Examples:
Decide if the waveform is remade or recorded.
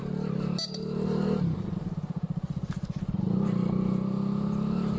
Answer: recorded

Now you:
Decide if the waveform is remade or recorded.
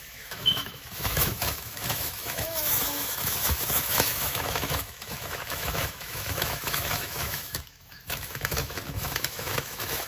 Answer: remade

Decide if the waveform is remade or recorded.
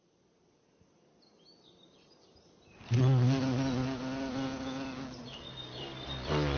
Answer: recorded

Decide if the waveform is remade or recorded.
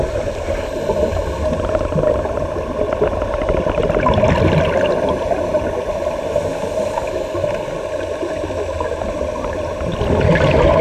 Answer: recorded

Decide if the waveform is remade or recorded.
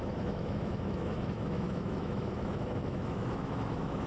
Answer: remade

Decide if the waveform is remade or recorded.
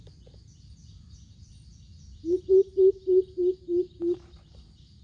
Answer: recorded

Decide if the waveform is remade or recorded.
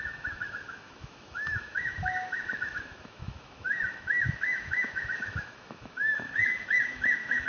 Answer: remade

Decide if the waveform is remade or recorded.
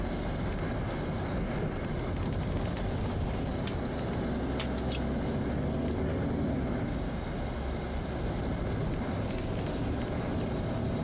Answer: recorded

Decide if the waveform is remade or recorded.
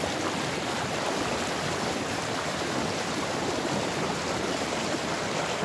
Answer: recorded